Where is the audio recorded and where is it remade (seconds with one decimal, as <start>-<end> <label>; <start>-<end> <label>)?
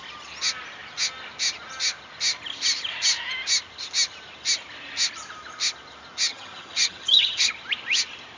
0.0-6.3 recorded; 6.3-7.5 remade; 7.5-8.4 recorded